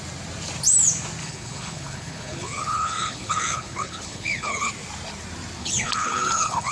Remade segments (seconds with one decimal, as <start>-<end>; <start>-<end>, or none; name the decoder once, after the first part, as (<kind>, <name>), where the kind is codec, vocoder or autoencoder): 1.2-4.7 (codec, HILCodec); 5.6-6.7